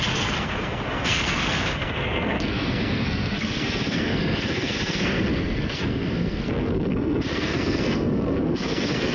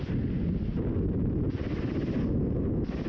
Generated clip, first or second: first